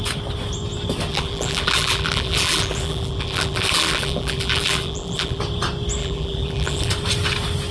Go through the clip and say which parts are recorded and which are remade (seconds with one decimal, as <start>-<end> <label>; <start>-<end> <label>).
0.0-1.1 recorded; 1.1-5.4 remade; 5.4-6.0 recorded; 6.0-6.9 remade; 6.9-7.7 recorded